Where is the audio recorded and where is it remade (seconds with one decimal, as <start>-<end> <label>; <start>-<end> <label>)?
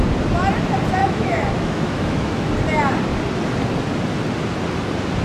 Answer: 0.0-1.0 recorded; 1.0-2.5 remade; 2.5-5.2 recorded